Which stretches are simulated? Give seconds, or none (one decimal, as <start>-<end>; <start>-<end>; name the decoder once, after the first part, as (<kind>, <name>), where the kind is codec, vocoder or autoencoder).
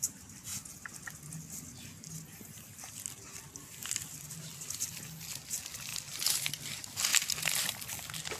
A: 0.0-0.5 (vocoder, BigVGAN v2); 3.5-5.9; 6.4-7.1; 7.6-8.4